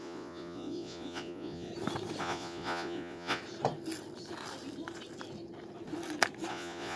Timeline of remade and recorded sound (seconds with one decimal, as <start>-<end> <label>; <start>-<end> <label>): 0.0-1.7 remade; 1.7-2.2 recorded; 2.2-3.4 remade; 3.4-6.5 recorded; 6.5-7.0 remade